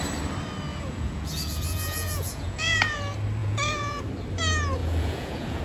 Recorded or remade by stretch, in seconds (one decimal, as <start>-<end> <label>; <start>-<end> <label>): 0.0-0.7 recorded; 0.7-3.0 remade; 3.0-3.4 recorded; 3.4-4.0 remade; 4.0-4.8 recorded; 4.8-5.6 remade